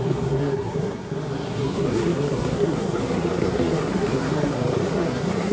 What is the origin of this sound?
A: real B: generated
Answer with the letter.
B